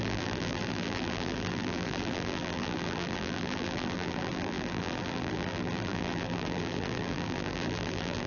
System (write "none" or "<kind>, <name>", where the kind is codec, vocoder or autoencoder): vocoder, BigVGAN v2